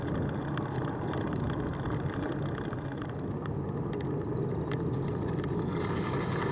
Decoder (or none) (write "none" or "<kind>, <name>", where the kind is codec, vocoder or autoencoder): none